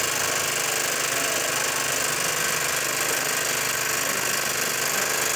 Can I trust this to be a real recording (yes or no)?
yes